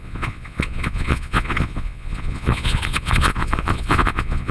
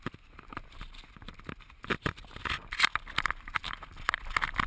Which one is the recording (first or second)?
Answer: second